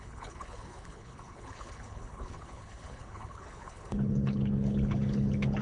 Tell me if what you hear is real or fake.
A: fake